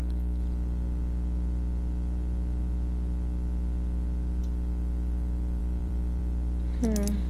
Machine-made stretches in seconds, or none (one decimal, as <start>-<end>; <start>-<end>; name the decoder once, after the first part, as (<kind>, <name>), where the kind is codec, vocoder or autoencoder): 5.6-6.2 (vocoder, BigVGAN v2)